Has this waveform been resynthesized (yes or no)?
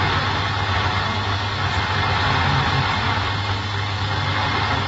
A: no